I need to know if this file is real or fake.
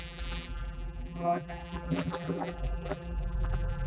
fake